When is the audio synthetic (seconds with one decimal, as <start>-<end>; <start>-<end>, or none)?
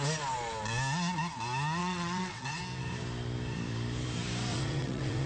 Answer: 1.8-2.6; 4.5-5.3